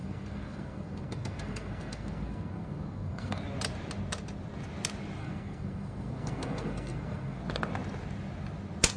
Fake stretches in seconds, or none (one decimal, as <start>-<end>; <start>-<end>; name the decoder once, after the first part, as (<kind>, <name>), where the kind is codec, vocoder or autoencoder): 0.0-3.4 (codec, SNAC); 5.2-7.4